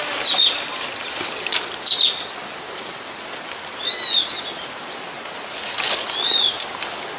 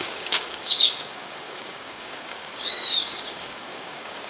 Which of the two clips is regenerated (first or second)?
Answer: second